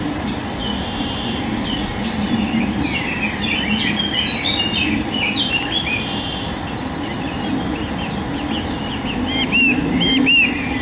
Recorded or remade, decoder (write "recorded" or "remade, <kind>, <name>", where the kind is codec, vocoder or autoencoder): recorded